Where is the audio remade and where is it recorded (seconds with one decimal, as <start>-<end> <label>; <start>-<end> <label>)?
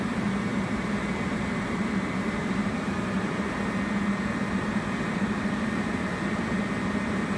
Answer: 0.0-0.5 recorded; 0.5-3.6 remade; 3.6-4.7 recorded; 4.7-6.6 remade; 6.6-7.4 recorded